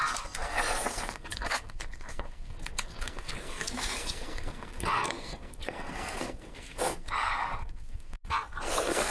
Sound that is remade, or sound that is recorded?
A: remade